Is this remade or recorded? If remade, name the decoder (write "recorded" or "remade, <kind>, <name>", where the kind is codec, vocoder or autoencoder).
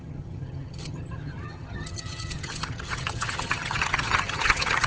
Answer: remade, vocoder, HiFi-GAN